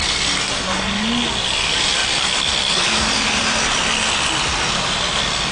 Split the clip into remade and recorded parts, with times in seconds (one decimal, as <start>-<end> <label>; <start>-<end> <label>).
0.0-5.5 recorded